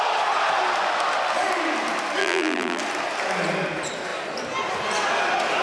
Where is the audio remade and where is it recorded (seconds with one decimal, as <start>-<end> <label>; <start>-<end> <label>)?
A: 0.0-2.2 recorded; 2.2-2.8 remade; 2.8-5.6 recorded